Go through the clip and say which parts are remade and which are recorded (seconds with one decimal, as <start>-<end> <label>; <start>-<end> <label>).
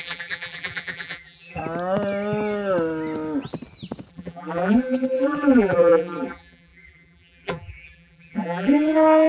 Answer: 0.0-1.6 remade; 1.6-4.1 recorded; 4.1-9.3 remade